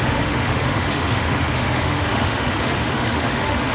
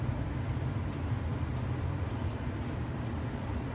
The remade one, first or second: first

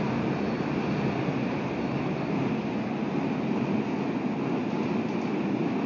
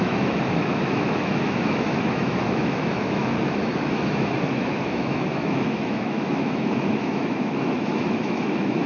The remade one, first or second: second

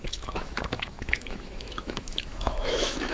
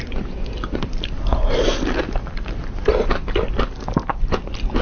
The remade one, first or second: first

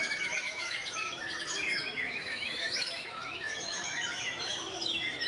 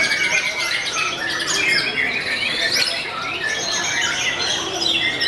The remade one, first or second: first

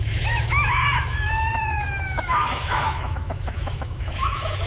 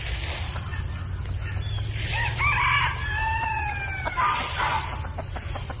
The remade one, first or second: first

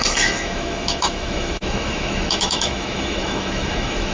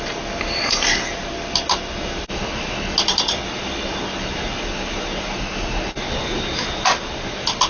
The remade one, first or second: first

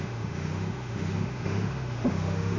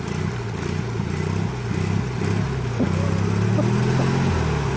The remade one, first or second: first